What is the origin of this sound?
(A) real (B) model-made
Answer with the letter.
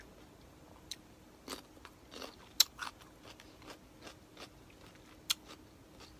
A